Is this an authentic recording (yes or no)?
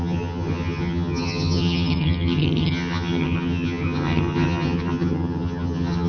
no